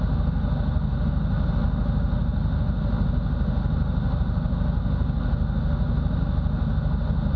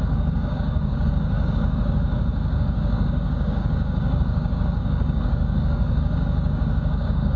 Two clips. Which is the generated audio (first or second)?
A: second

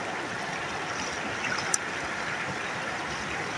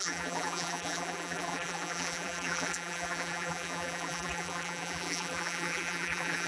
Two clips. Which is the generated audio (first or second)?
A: second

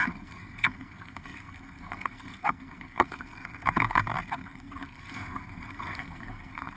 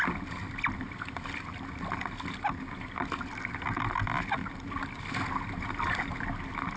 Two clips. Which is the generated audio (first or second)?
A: first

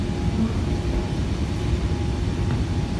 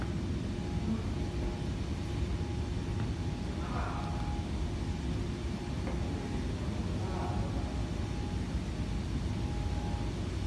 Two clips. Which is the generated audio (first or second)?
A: first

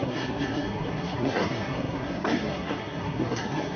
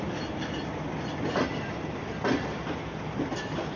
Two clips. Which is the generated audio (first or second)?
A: first